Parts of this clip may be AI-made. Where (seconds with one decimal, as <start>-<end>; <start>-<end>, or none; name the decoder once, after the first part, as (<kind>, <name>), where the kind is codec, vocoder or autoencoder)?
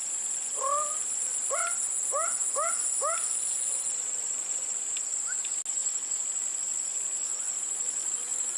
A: none